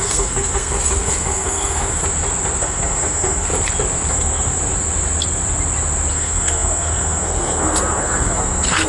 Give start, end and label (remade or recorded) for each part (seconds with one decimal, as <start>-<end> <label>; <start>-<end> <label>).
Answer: 0.0-2.0 remade; 2.0-2.6 recorded; 2.6-3.5 remade; 3.5-4.1 recorded; 4.1-4.6 remade; 4.6-6.1 recorded; 6.1-8.9 remade